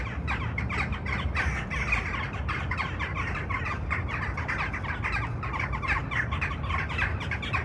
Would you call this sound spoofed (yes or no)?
no